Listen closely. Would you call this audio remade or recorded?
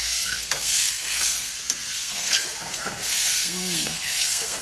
remade